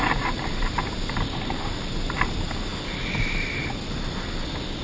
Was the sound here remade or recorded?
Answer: recorded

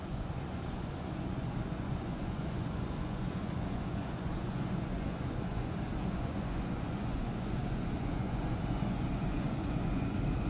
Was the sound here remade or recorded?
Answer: remade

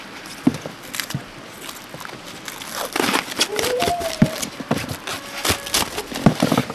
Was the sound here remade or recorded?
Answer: recorded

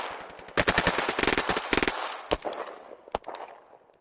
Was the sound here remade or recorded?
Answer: recorded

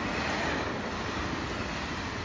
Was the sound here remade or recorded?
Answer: recorded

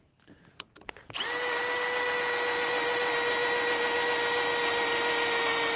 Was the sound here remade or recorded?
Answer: recorded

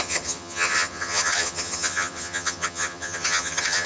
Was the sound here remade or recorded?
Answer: remade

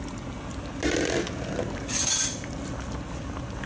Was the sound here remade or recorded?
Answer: recorded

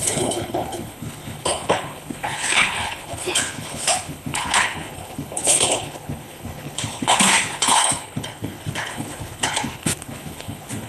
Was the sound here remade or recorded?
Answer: remade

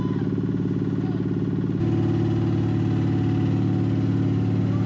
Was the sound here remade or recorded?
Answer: recorded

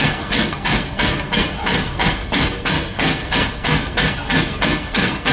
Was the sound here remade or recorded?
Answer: remade